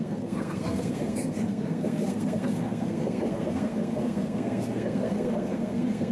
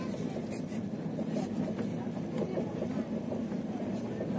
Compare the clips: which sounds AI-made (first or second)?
first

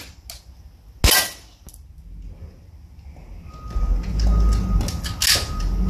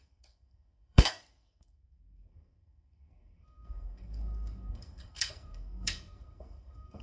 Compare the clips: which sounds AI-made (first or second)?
second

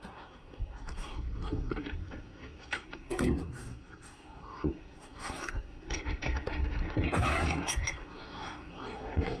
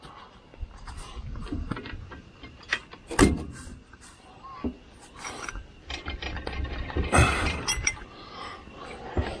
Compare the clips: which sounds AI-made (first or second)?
first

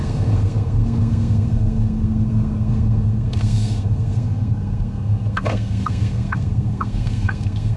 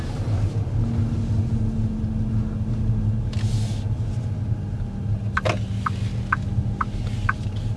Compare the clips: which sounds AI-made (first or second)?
first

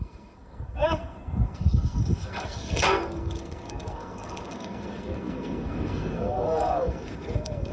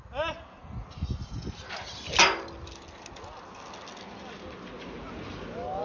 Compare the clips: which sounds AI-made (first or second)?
first